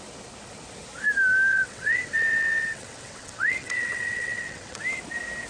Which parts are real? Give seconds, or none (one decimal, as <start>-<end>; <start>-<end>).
0.0-1.5; 4.8-5.5